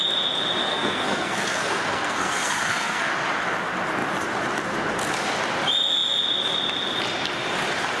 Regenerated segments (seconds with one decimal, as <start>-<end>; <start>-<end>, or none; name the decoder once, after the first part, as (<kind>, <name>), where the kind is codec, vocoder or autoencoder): 0.6-3.1 (codec, SNAC)